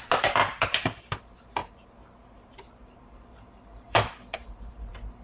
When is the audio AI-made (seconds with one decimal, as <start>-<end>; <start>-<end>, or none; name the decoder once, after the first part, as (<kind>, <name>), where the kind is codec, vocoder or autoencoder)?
0.0-5.2 (vocoder, BigVGAN v2)